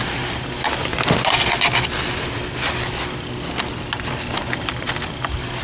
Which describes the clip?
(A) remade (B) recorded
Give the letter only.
B